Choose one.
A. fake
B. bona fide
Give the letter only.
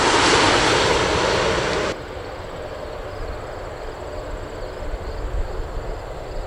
B